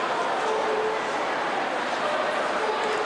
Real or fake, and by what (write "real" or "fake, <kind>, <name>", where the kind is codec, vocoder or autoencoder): real